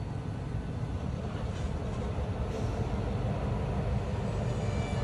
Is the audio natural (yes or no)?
yes